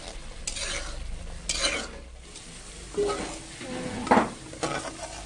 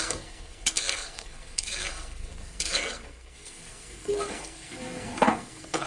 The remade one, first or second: second